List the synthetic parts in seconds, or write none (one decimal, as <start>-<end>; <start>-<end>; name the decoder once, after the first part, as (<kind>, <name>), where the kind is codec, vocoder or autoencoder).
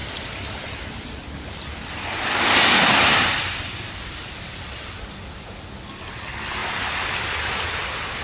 0.0-4.9 (vocoder, BigVGAN v2); 6.6-8.2